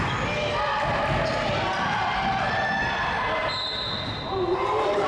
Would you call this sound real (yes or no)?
yes